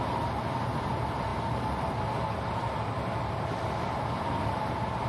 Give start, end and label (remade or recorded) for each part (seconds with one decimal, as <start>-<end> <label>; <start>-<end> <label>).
0.0-1.3 remade; 1.3-4.4 recorded; 4.4-5.1 remade